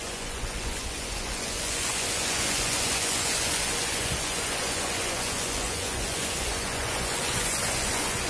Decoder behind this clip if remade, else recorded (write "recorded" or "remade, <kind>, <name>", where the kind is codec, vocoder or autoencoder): remade, vocoder, Vocos